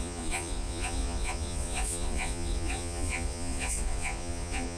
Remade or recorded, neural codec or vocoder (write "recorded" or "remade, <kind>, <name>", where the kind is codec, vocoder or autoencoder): remade, vocoder, Vocos